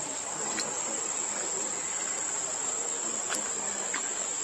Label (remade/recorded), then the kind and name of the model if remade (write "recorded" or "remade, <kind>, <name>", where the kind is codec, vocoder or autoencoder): recorded